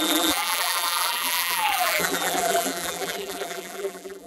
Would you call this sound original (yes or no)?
no